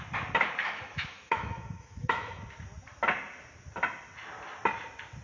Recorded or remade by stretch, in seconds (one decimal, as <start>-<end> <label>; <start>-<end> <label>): 0.0-0.6 recorded; 0.6-2.4 remade; 2.4-5.2 recorded